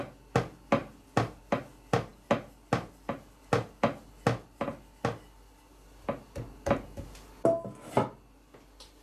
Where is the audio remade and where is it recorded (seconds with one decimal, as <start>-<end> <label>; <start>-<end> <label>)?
0.0-0.8 recorded; 0.8-1.4 remade; 1.4-9.0 recorded